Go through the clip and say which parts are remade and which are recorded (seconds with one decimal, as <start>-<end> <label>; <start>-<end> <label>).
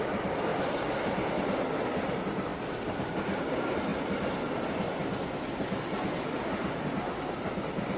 0.0-8.0 recorded